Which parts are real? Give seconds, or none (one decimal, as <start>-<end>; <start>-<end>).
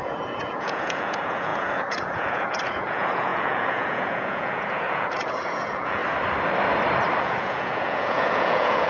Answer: 6.0-7.2